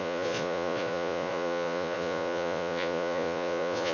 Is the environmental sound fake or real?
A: fake